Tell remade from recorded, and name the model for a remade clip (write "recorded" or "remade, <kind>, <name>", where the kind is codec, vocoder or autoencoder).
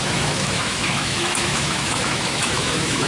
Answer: remade, autoencoder, DAC-VAE